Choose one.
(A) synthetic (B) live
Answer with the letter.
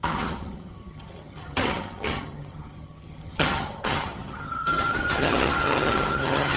A